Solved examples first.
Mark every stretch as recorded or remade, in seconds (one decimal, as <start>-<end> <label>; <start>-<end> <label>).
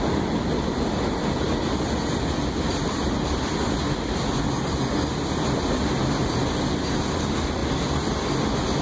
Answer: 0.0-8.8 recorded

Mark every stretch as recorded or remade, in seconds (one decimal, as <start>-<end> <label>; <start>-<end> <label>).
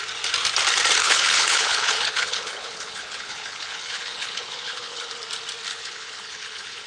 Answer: 0.0-1.0 recorded; 1.0-5.1 remade; 5.1-5.7 recorded; 5.7-6.9 remade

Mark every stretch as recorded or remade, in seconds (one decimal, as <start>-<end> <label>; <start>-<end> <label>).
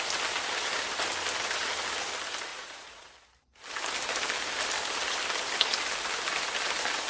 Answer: 0.0-2.5 recorded; 2.5-3.1 remade; 3.1-7.1 recorded